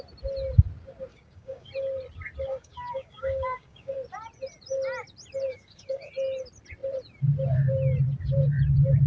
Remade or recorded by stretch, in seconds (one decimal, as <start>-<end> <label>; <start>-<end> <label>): 0.0-1.1 recorded; 1.1-1.7 remade; 1.7-2.5 recorded; 2.5-3.9 remade; 3.9-5.5 recorded; 5.5-6.1 remade; 6.1-9.1 recorded